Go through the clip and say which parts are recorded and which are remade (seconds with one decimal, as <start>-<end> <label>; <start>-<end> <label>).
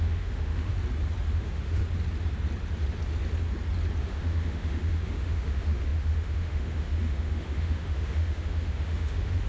0.0-0.7 remade; 0.7-1.3 recorded; 1.3-1.8 remade; 1.8-4.0 recorded; 4.0-9.5 remade